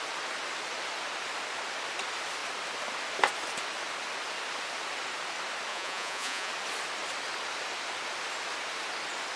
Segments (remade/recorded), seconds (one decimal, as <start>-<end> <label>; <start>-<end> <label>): 0.0-5.7 recorded; 5.7-6.5 remade; 6.5-9.4 recorded